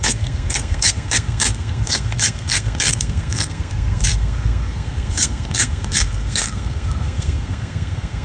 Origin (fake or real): fake